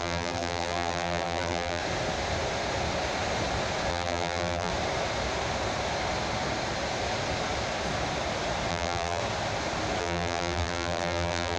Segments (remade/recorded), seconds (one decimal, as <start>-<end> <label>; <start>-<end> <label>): 0.0-1.8 remade; 1.8-3.9 recorded; 3.9-4.7 remade; 4.7-8.7 recorded; 8.7-9.2 remade; 9.2-10.0 recorded; 10.0-11.6 remade